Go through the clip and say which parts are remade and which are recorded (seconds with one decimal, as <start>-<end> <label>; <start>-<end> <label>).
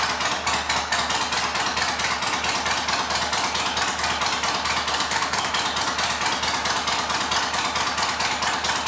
0.0-4.9 recorded; 4.9-5.5 remade; 5.5-8.9 recorded